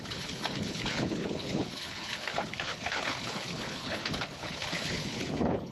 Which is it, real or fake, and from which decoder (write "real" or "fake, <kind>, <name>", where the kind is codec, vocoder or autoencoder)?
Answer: fake, codec, HILCodec